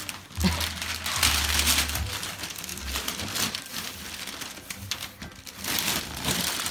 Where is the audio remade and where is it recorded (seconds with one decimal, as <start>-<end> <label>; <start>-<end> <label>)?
0.0-6.7 recorded